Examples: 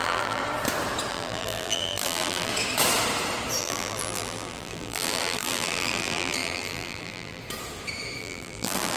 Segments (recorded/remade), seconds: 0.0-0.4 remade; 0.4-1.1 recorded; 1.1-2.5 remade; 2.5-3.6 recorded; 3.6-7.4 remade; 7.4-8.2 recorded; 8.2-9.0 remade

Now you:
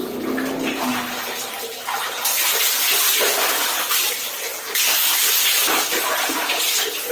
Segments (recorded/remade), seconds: 0.0-7.1 recorded

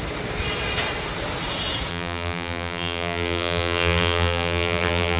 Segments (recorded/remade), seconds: 0.0-1.9 recorded; 1.9-5.2 remade